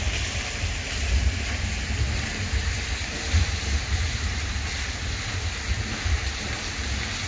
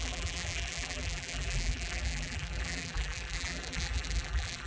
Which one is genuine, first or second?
first